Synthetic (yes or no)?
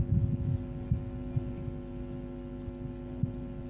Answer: no